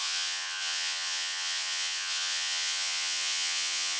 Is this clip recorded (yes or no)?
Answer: no